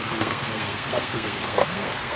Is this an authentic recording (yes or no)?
no